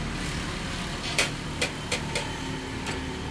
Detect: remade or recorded recorded